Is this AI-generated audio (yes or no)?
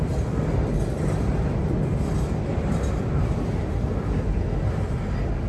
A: no